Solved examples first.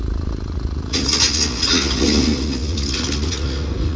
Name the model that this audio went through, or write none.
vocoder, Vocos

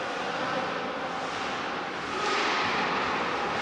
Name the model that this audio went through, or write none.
vocoder, BigVGAN v2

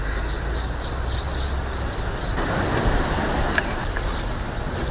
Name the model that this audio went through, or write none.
none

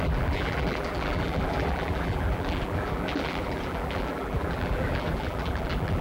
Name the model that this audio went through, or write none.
vocoder, BigVGAN v2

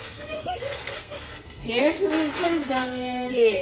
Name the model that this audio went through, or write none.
codec, SNAC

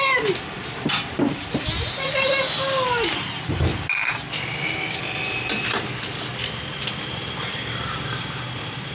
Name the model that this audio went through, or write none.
none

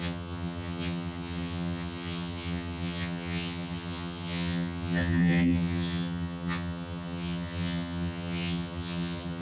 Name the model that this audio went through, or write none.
vocoder, HiFi-GAN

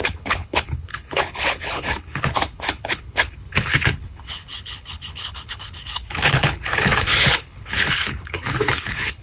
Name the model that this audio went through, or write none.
codec, HILCodec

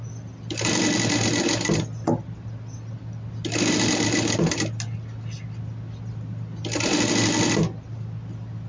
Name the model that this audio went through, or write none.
none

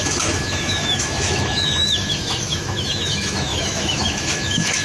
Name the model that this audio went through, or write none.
autoencoder, DAC-VAE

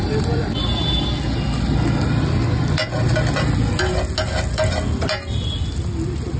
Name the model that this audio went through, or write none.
none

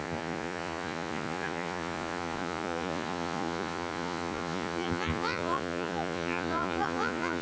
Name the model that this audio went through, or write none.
vocoder, Vocos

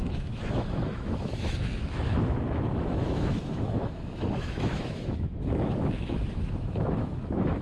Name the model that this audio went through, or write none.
autoencoder, DAC-VAE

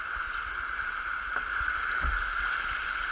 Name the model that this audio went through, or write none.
none